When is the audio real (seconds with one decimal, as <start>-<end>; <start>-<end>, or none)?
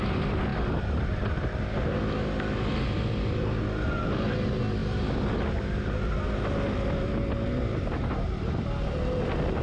0.0-9.6